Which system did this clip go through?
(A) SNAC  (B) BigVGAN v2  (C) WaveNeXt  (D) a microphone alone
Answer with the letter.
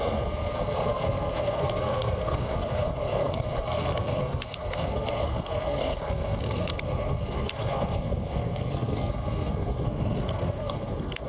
A